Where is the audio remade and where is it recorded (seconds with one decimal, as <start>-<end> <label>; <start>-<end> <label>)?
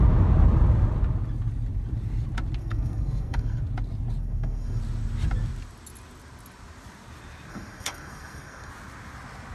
0.0-2.6 recorded; 2.6-3.6 remade; 3.6-4.2 recorded; 4.2-4.8 remade; 4.8-7.5 recorded; 7.5-8.7 remade; 8.7-9.5 recorded